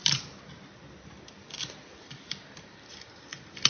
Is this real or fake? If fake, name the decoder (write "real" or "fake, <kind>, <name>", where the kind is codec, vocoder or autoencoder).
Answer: real